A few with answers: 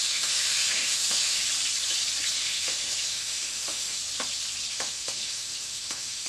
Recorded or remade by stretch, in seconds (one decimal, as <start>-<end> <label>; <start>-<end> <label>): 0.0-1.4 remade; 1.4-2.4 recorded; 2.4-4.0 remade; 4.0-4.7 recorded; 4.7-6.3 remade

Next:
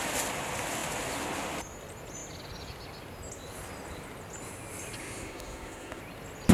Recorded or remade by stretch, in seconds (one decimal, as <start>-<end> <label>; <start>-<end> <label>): 0.0-5.0 recorded; 5.0-6.0 remade; 6.0-6.5 recorded

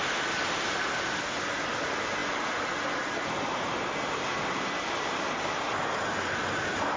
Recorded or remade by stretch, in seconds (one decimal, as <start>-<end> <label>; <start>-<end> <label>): 0.0-7.0 recorded

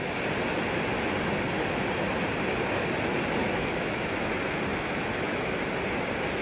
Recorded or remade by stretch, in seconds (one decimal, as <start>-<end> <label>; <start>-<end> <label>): 0.0-3.4 recorded; 3.4-4.3 remade; 4.3-4.7 recorded; 4.7-5.6 remade; 5.6-6.4 recorded

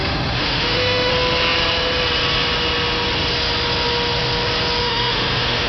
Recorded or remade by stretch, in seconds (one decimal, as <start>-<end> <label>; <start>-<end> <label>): 0.0-1.1 remade; 1.1-4.8 recorded; 4.8-5.7 remade